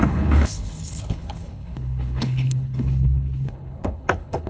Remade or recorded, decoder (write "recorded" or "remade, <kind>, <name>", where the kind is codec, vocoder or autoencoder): remade, codec, HILCodec